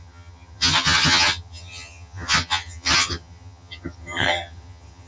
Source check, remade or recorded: remade